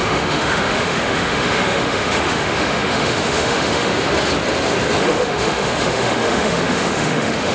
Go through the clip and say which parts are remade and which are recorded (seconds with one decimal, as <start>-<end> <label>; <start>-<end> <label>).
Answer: 0.0-3.9 remade; 3.9-5.0 recorded; 5.0-7.5 remade